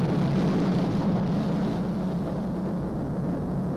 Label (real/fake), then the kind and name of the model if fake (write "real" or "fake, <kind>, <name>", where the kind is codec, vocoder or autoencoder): real